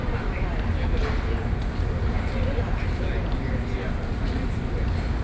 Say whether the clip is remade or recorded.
recorded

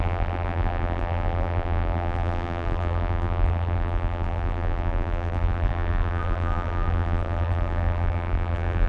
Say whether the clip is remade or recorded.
remade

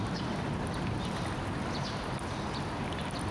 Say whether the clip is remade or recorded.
recorded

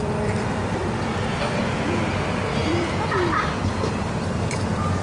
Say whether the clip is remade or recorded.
remade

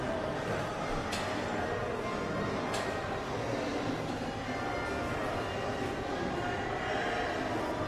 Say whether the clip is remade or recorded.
recorded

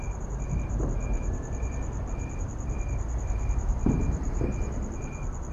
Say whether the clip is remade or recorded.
remade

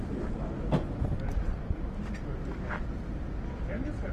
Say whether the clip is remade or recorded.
recorded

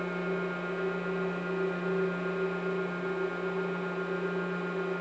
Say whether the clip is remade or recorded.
recorded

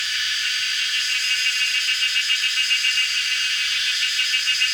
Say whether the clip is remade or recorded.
remade